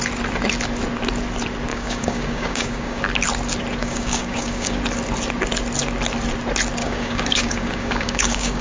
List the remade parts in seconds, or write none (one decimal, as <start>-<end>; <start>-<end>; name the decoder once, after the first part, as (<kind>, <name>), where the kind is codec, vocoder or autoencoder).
1.7-3.0 (codec, DAC); 3.8-4.8; 6.8-8.6